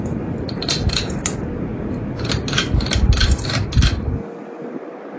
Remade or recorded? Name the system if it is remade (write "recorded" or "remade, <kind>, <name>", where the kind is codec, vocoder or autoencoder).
recorded